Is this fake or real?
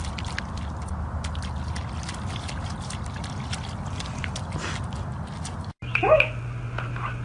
real